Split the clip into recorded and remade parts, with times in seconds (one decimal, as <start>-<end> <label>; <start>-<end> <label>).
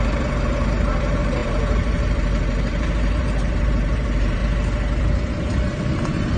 0.0-4.4 remade; 4.4-5.0 recorded; 5.0-6.4 remade